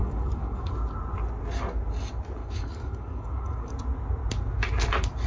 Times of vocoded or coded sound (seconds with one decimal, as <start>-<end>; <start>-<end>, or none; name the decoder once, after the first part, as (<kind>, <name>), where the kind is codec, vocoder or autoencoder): 0.0-0.7 (codec, DAC); 2.4-3.7